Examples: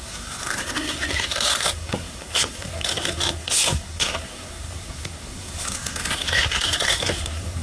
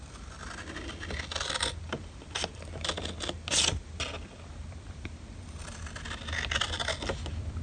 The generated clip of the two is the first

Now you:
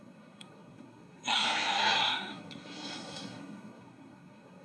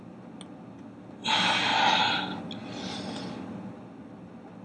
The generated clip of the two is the first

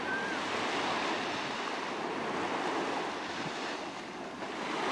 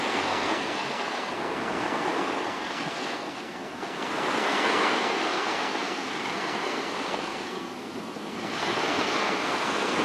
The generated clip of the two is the second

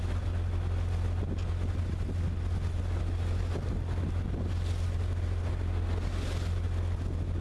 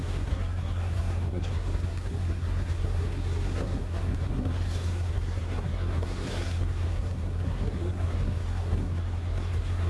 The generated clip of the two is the second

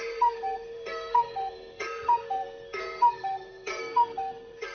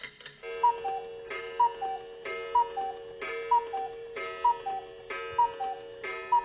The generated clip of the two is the first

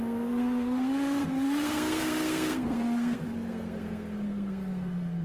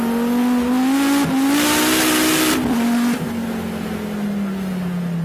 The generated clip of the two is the first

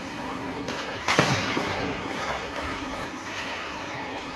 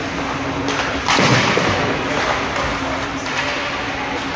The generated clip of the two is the first